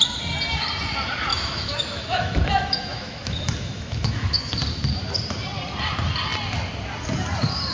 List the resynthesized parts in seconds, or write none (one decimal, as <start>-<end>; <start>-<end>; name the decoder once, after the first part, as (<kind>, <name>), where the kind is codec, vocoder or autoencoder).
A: 1.3-4.5 (autoencoder, DAC-VAE)